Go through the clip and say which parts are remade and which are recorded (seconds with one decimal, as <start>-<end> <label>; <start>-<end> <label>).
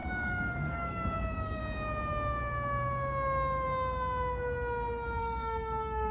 0.0-1.6 remade; 1.6-5.2 recorded; 5.2-6.1 remade